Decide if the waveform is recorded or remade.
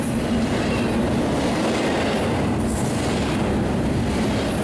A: recorded